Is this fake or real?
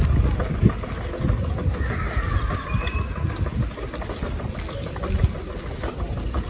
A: real